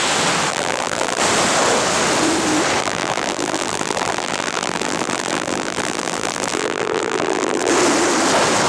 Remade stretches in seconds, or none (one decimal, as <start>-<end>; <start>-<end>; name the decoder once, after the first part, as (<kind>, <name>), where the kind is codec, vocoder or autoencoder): 0.5-1.2 (vocoder, BigVGAN v2); 2.8-7.7